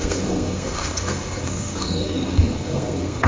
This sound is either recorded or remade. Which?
remade